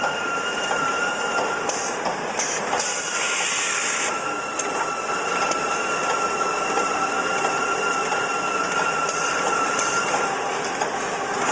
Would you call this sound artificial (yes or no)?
no